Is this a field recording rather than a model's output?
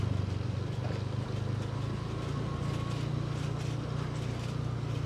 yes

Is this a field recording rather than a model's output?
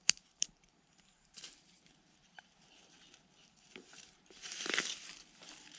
no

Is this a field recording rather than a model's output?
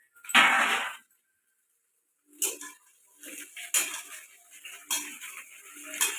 yes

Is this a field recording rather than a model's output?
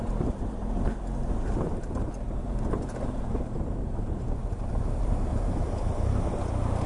no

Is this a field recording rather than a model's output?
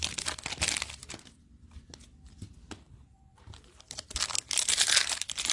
yes